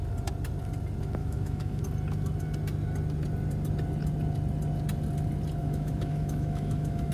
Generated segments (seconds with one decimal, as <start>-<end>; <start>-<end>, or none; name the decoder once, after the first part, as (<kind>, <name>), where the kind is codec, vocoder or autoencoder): 1.2-1.8 (autoencoder, DAC-VAE); 5.6-7.1